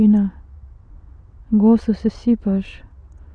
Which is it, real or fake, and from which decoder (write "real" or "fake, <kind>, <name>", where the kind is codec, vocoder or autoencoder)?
fake, vocoder, WaveNeXt